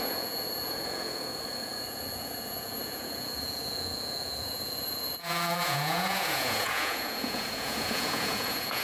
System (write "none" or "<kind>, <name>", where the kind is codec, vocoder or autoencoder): vocoder, Vocos